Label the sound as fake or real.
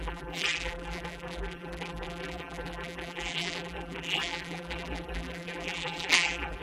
fake